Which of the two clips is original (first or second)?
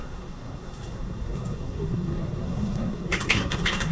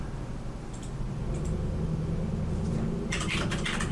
second